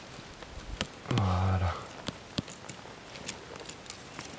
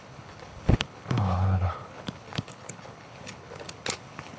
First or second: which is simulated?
second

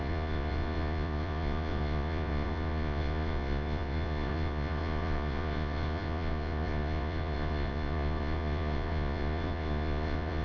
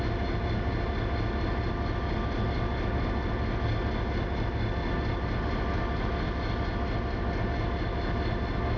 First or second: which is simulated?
first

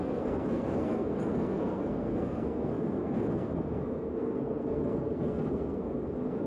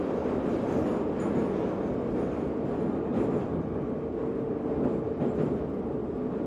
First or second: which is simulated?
first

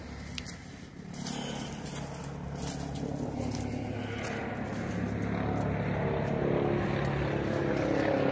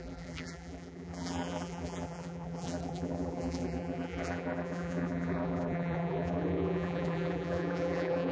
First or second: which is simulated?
second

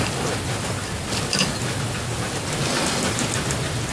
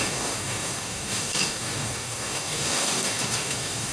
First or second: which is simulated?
second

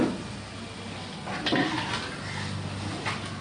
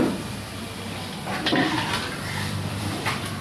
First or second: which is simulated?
second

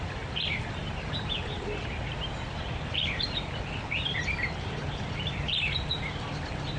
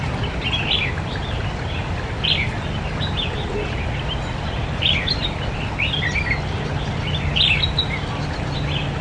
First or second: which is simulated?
first